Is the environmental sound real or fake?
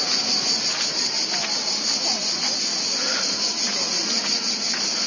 real